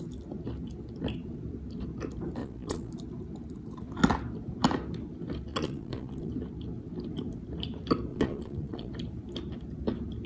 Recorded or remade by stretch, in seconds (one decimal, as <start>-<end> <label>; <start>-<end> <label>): 0.0-2.4 recorded; 2.4-2.9 remade; 2.9-5.5 recorded; 5.5-6.3 remade; 6.3-8.1 recorded; 8.1-8.9 remade; 8.9-10.3 recorded